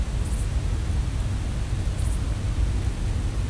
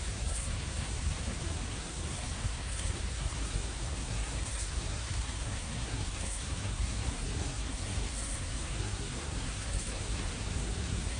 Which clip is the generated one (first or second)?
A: second